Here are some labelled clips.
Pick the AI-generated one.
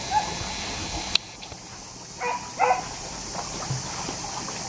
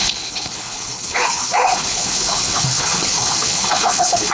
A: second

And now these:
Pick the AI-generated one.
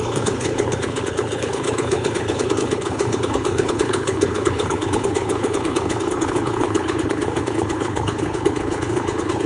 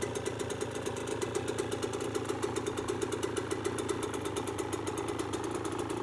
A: first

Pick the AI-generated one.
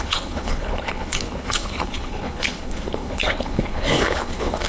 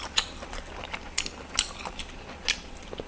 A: first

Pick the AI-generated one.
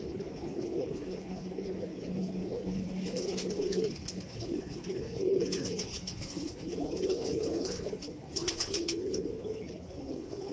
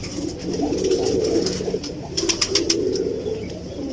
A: first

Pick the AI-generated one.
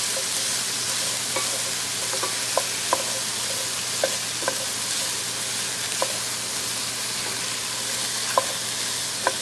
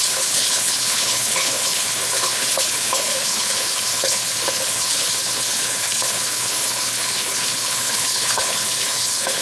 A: second